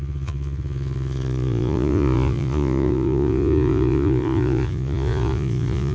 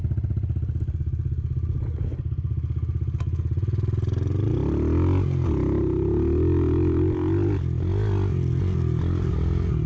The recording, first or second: second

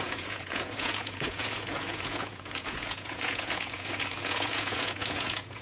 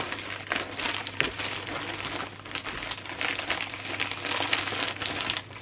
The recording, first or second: second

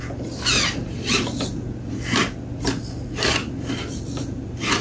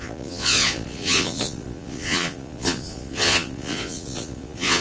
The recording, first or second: first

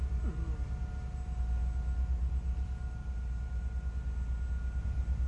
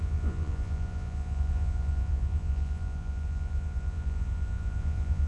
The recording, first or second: first